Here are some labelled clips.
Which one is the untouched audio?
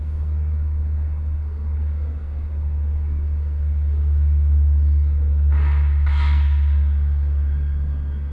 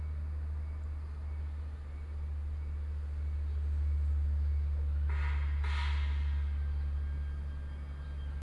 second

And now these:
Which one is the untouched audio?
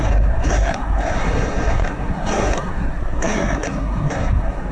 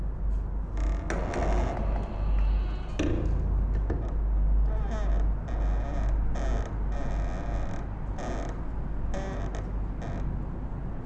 second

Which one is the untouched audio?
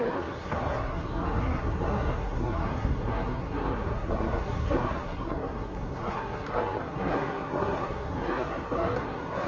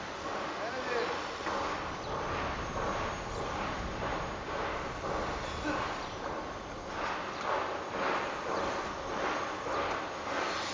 second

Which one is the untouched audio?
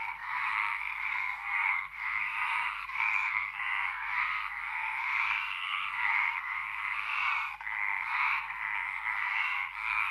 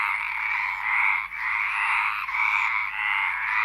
second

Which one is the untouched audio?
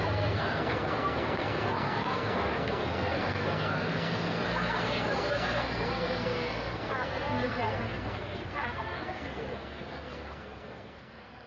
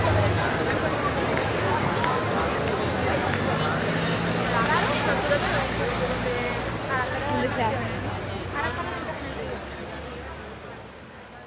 second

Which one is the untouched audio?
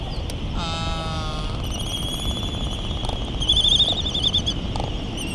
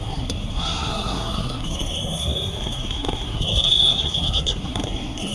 first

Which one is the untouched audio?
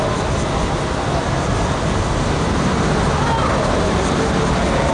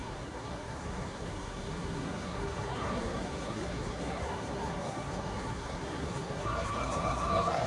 first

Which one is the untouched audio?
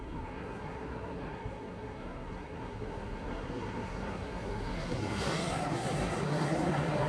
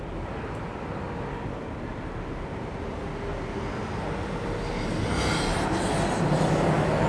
second